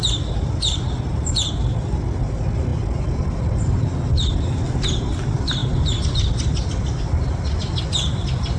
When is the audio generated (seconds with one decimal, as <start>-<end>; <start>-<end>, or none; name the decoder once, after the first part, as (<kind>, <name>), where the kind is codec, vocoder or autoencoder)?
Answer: none